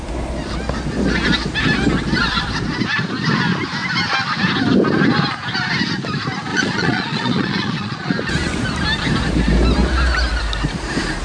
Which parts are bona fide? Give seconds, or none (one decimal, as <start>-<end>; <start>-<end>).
0.0-6.5; 8.1-11.2